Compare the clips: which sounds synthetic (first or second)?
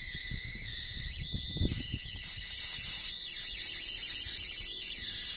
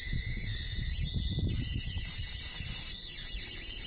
second